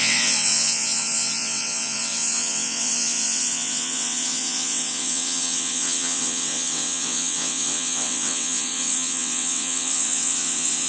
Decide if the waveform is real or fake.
fake